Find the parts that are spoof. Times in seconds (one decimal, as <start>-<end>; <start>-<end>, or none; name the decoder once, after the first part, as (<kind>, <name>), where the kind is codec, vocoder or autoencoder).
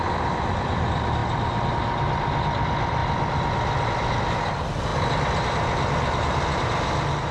none